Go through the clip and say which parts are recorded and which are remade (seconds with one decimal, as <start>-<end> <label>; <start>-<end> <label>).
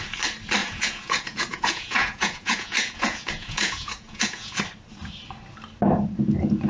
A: 0.0-0.6 recorded; 0.6-4.6 remade; 4.6-6.7 recorded